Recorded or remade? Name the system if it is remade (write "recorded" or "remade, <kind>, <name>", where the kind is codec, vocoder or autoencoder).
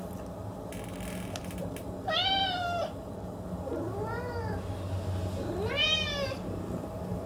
recorded